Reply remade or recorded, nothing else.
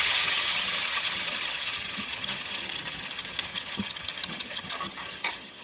remade